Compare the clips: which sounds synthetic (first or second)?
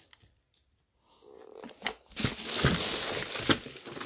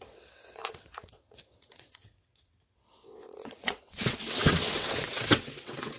second